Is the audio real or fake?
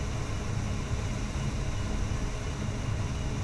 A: real